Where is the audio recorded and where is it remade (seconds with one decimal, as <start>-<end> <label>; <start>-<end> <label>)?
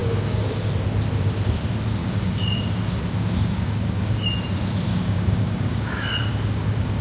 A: 0.0-0.7 remade; 0.7-2.0 recorded; 2.0-2.7 remade; 2.7-3.4 recorded; 3.4-4.3 remade; 4.3-4.9 recorded; 4.9-7.0 remade